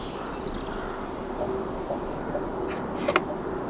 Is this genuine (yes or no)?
yes